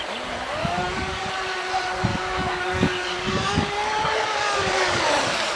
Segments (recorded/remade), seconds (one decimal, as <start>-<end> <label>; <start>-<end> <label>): 0.0-0.6 recorded; 0.6-1.3 remade; 1.3-2.1 recorded; 2.1-5.0 remade; 5.0-5.6 recorded